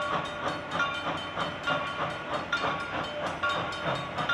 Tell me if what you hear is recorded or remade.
recorded